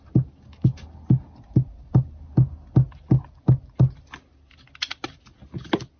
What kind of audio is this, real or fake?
real